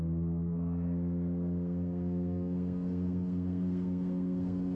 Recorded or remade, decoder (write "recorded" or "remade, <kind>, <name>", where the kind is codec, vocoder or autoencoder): remade, codec, SNAC